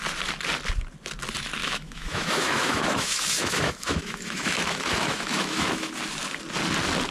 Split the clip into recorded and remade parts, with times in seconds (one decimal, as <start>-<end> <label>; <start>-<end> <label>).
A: 0.0-1.6 recorded; 1.6-5.9 remade; 5.9-7.1 recorded